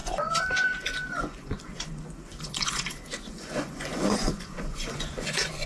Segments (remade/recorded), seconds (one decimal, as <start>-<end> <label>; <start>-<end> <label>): 0.0-5.7 remade